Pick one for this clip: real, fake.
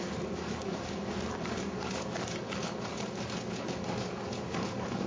fake